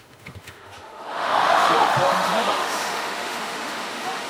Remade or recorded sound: remade